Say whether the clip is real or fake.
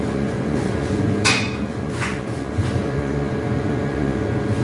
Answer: fake